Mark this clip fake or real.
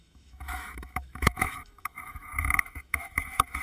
fake